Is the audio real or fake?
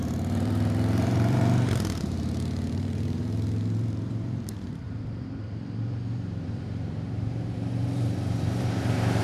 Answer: fake